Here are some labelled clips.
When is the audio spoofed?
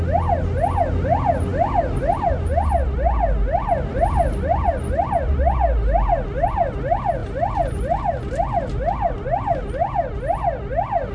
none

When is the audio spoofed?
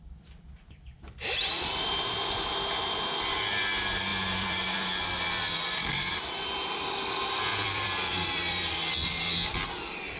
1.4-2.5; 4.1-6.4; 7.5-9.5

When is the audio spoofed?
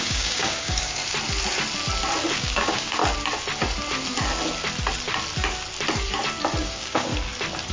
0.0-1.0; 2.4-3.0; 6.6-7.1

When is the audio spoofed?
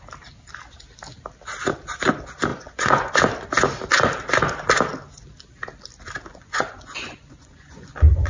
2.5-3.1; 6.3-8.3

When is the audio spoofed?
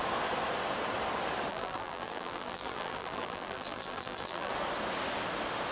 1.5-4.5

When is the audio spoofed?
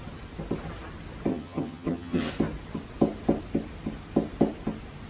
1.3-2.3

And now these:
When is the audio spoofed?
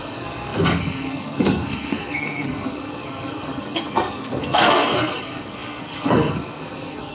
0.0-7.1